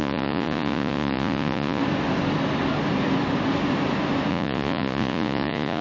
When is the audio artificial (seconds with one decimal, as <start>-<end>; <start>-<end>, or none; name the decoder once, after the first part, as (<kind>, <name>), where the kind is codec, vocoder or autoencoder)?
0.0-1.8 (vocoder, Vocos); 4.3-5.8

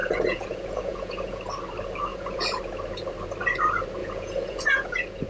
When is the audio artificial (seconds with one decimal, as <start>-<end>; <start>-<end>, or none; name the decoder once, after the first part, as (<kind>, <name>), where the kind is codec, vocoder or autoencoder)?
0.0-1.4 (vocoder, Vocos); 2.1-2.6; 4.0-5.3